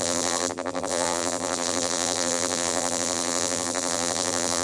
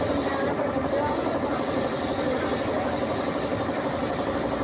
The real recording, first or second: second